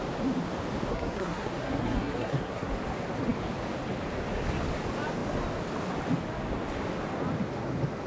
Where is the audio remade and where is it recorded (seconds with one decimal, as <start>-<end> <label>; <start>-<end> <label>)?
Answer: 0.0-0.9 recorded; 0.9-2.7 remade; 2.7-8.1 recorded